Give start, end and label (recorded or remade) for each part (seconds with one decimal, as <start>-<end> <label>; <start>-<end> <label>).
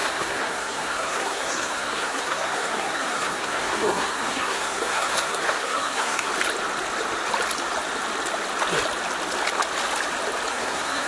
0.0-6.3 remade; 6.3-10.5 recorded; 10.5-11.1 remade